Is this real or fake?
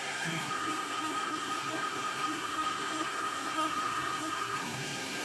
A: fake